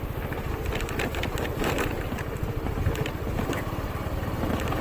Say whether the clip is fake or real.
real